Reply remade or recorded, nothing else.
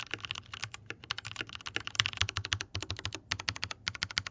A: recorded